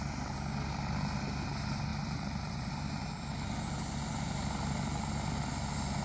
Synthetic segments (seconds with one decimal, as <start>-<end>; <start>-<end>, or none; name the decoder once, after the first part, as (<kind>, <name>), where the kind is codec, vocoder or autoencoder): 1.9-3.1 (vocoder, BigVGAN v2)